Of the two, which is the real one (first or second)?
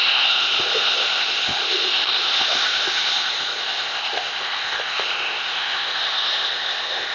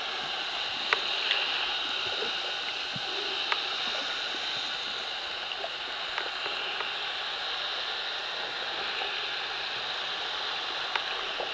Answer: second